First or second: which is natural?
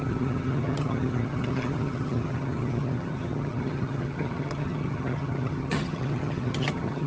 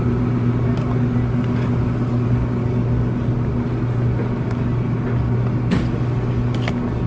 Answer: second